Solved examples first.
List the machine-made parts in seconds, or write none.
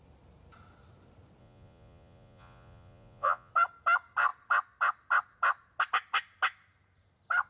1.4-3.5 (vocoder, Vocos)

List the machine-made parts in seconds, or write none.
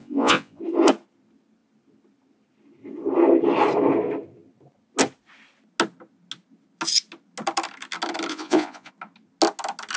0.0-0.6 (vocoder, Vocos); 8.3-8.9